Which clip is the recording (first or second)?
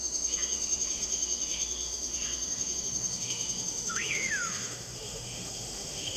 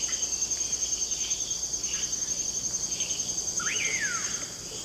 second